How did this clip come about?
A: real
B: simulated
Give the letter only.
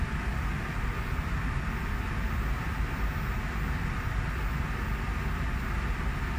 A